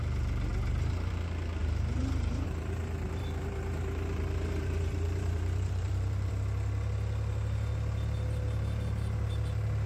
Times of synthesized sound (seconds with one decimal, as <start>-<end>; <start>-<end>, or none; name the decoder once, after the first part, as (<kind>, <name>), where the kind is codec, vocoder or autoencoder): 1.6-6.3 (vocoder, BigVGAN v2)